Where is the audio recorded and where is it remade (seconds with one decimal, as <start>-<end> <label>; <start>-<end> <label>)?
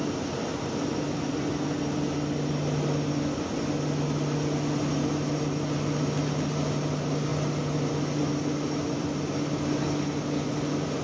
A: 0.0-11.0 recorded